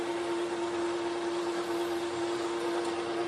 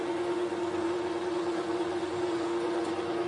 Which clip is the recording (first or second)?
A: first